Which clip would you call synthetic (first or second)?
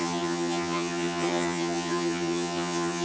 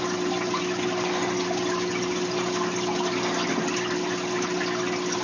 first